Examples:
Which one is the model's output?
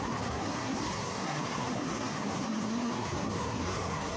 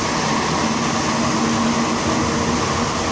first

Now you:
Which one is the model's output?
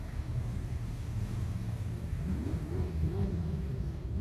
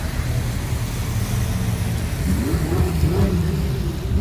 first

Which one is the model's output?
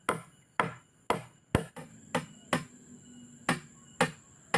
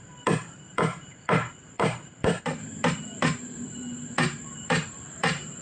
second